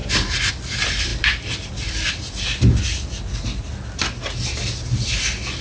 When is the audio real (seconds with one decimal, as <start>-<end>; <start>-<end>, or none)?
0.5-1.1; 2.1-5.6